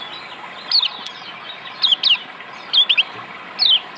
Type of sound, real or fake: real